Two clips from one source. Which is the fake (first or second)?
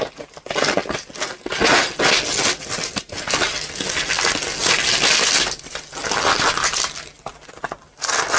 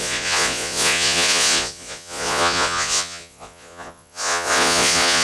second